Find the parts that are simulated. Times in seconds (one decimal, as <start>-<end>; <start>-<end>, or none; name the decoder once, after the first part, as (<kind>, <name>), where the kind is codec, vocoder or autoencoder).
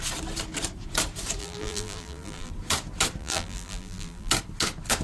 1.4-2.5 (vocoder, BigVGAN v2); 3.2-4.3